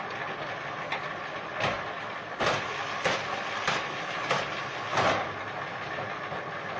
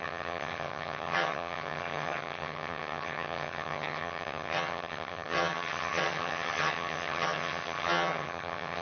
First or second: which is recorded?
first